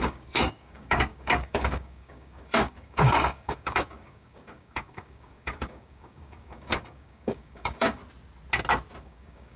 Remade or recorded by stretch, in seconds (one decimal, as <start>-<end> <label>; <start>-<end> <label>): 0.0-8.0 remade; 8.0-9.0 recorded; 9.0-9.6 remade